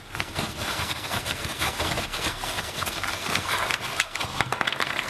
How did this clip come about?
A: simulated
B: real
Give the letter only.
A